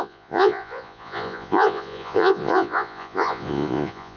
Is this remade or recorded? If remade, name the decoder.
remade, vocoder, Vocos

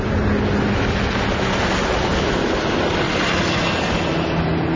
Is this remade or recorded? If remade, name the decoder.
recorded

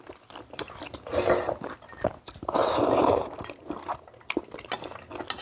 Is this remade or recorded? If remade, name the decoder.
recorded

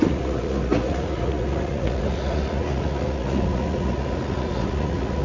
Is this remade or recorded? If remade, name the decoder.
remade, vocoder, Vocos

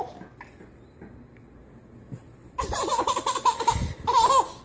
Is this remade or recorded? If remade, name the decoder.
recorded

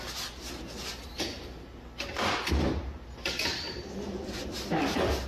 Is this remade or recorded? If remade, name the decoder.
recorded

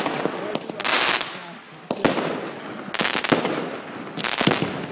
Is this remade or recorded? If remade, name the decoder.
recorded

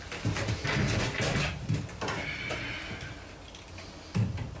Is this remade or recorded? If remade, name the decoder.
recorded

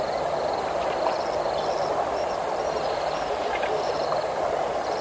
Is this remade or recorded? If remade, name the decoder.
remade, vocoder, BigVGAN v2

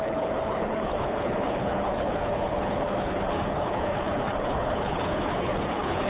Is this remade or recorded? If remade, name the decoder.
remade, codec, HILCodec